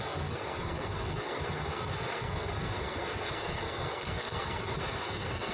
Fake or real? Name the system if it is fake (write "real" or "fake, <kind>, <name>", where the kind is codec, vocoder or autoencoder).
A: fake, codec, SNAC